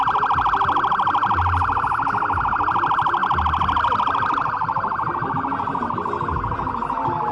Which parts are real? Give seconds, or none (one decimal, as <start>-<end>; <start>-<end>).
0.0-7.3